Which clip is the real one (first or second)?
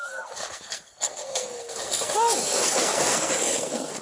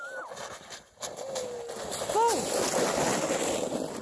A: second